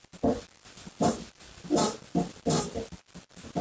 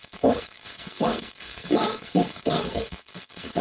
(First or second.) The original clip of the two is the first